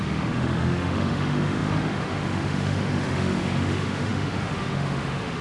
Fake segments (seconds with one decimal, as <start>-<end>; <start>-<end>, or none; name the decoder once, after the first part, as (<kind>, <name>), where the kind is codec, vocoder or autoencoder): 0.0-5.4 (autoencoder, DAC-VAE)